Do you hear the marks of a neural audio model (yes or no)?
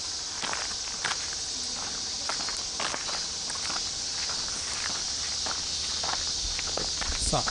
no